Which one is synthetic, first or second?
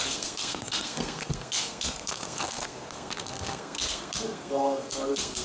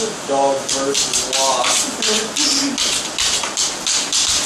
first